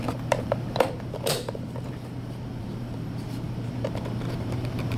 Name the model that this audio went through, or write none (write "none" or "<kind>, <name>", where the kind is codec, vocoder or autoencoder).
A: vocoder, BigVGAN v2